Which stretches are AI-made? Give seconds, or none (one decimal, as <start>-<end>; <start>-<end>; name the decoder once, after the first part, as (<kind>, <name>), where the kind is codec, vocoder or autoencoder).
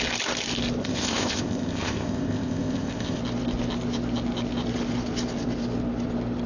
0.8-3.2 (codec, ZipCodec)